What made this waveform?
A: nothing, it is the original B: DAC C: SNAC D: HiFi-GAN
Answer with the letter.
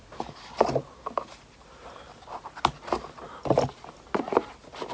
A